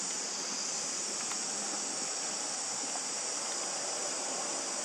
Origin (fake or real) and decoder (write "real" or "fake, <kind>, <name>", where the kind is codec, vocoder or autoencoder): real